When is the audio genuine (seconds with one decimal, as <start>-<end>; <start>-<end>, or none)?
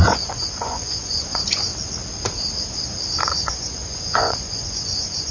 1.7-3.2